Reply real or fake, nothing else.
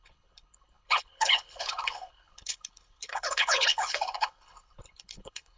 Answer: fake